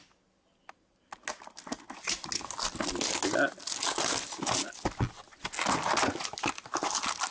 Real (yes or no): yes